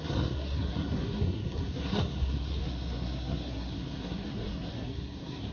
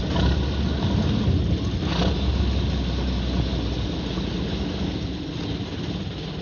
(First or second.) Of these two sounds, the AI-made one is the first